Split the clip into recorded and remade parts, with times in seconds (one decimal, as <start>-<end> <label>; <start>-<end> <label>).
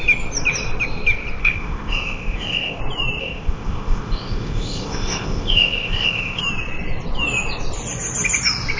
0.0-1.4 recorded; 1.4-2.8 remade; 2.8-3.2 recorded; 3.2-6.4 remade; 6.4-8.8 recorded